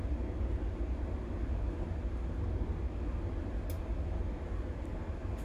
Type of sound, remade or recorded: recorded